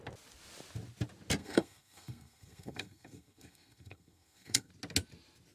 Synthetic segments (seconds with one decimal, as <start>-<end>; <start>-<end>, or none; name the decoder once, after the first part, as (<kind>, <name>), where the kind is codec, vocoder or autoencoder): 1.4-4.7 (codec, SNAC)